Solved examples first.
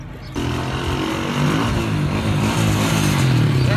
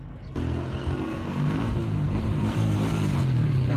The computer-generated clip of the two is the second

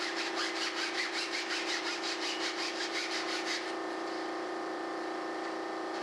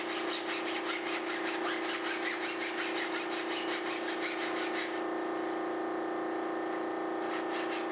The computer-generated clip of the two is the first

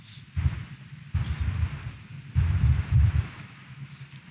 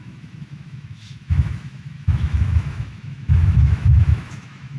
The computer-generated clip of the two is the second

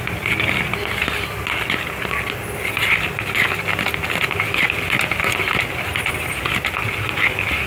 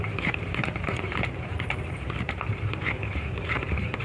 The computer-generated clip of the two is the second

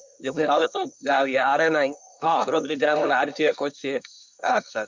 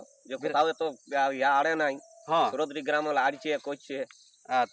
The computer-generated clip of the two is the first